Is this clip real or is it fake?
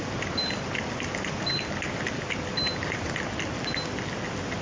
real